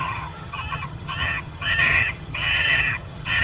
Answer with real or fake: fake